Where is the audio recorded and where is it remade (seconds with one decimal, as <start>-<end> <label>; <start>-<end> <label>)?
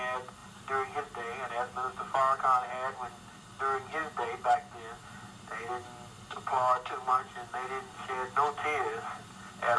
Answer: 0.0-9.8 recorded